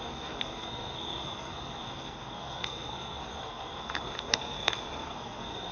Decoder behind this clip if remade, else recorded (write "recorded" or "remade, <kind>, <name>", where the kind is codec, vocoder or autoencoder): remade, codec, SNAC